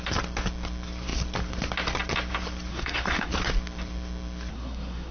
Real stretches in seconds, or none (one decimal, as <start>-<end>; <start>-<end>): 0.0-2.7; 3.3-4.5